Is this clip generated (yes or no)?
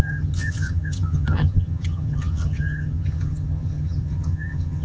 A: yes